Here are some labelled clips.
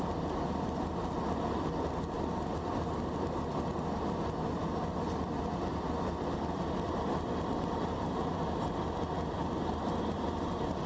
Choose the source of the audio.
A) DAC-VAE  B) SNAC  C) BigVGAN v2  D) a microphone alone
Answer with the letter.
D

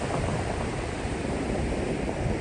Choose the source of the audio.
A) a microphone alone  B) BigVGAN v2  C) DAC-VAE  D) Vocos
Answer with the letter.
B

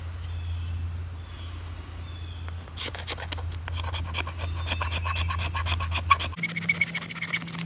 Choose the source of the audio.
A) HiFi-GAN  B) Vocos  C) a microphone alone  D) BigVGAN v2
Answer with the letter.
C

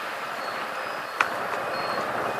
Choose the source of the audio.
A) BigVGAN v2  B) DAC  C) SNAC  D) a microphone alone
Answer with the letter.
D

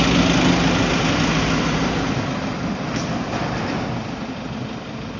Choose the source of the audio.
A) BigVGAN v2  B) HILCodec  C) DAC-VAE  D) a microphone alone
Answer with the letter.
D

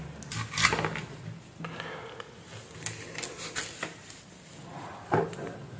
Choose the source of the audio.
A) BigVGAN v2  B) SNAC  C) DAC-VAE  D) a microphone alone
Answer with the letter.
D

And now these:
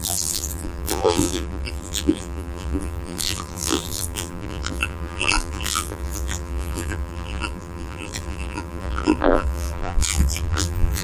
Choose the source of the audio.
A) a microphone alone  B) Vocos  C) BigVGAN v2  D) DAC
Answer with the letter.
C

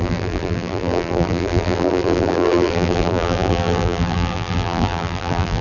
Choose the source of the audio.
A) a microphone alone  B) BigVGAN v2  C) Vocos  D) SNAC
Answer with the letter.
B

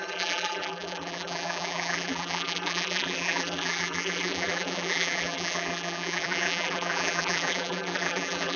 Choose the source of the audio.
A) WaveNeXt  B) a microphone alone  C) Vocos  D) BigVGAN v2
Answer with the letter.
D